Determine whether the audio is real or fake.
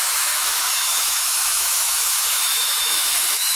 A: fake